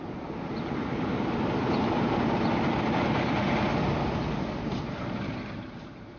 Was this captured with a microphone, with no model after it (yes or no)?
no